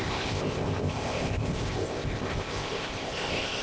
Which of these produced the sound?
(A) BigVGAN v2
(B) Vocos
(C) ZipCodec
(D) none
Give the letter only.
C